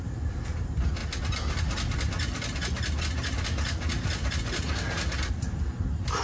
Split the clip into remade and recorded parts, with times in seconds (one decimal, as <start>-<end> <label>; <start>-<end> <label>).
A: 0.0-6.2 recorded